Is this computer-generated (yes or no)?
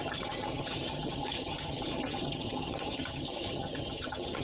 yes